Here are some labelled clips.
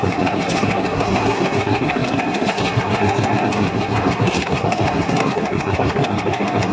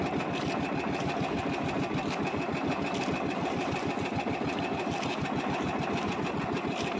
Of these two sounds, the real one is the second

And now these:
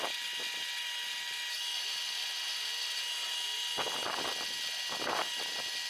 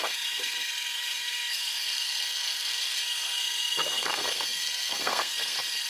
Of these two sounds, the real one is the first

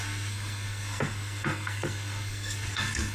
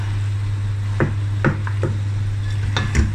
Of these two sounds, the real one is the second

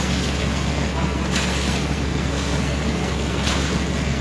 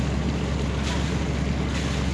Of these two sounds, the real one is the second